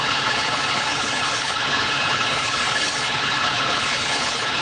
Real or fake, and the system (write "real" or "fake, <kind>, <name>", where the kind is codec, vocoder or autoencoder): fake, codec, HILCodec